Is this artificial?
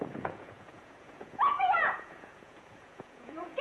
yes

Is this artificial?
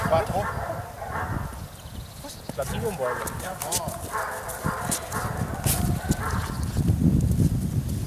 no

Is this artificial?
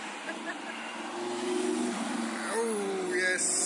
yes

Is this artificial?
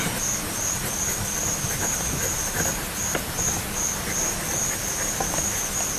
no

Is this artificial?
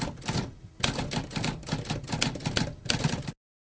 no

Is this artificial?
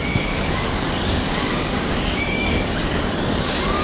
yes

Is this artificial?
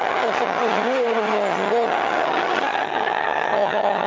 yes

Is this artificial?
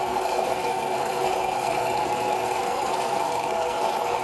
yes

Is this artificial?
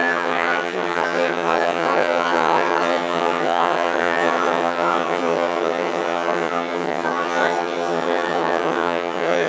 yes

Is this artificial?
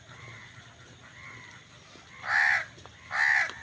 no